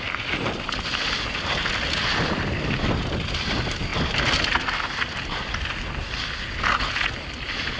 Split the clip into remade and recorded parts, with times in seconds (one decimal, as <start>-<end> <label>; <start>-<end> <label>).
0.0-7.8 recorded